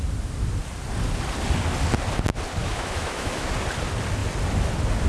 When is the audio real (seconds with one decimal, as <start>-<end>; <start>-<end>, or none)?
0.0-2.6; 3.5-5.1